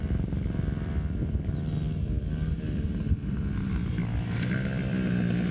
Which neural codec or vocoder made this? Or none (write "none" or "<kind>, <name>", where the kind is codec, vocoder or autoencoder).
none